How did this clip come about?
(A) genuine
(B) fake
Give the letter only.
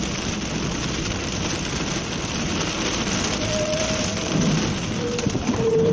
B